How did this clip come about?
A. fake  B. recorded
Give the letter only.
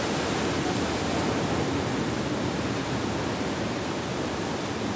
B